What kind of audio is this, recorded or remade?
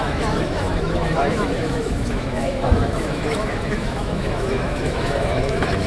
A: remade